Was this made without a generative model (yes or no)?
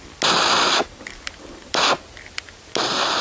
yes